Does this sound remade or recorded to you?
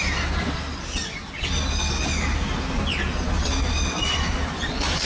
recorded